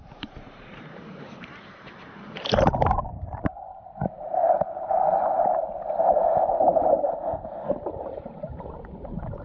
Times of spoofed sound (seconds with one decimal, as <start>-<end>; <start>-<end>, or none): 0.0-4.4; 6.9-9.4